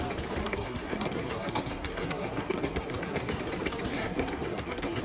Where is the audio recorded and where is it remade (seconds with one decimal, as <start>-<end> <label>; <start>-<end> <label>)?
0.0-0.4 recorded; 0.4-3.4 remade; 3.4-3.9 recorded; 3.9-5.0 remade

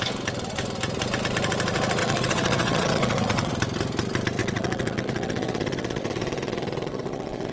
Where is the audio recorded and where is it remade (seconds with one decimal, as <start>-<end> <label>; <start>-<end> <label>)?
0.0-2.0 recorded; 2.0-3.5 remade; 3.5-4.4 recorded; 4.4-7.5 remade

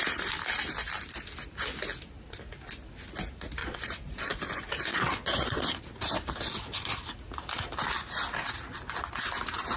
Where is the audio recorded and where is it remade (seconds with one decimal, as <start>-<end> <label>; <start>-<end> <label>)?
0.0-3.6 recorded; 3.6-4.4 remade; 4.4-4.9 recorded; 4.9-5.6 remade; 5.6-9.8 recorded

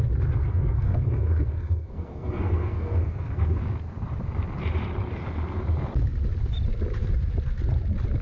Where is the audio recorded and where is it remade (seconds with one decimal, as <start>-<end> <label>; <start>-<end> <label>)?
0.0-0.4 recorded; 0.4-3.6 remade; 3.6-8.2 recorded

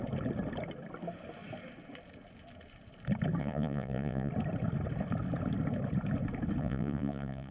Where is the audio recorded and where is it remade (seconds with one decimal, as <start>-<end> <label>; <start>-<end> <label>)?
0.0-3.4 recorded; 3.4-4.3 remade; 4.3-6.6 recorded; 6.6-7.5 remade

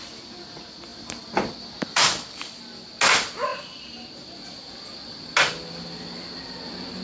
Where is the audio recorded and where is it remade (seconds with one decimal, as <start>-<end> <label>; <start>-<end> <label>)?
0.0-0.9 recorded; 0.9-2.4 remade; 2.4-7.0 recorded

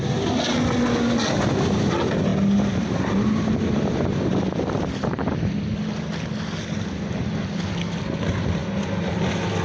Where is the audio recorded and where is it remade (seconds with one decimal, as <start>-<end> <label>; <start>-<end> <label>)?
0.0-9.6 recorded

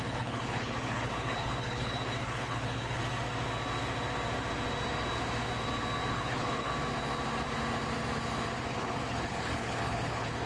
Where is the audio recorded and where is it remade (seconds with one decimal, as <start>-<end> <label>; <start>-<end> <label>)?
0.0-3.0 remade; 3.0-6.1 recorded; 6.1-6.7 remade; 6.7-8.7 recorded; 8.7-10.5 remade